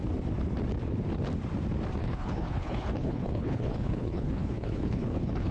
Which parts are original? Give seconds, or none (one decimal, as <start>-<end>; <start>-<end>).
0.0-2.0